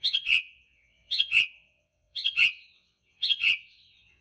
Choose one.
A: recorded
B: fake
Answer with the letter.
B